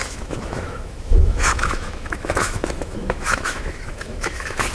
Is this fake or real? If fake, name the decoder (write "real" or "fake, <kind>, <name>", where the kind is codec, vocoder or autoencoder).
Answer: fake, autoencoder, DAC-VAE